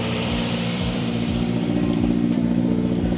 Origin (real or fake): fake